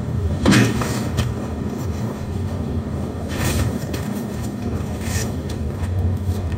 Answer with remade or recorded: remade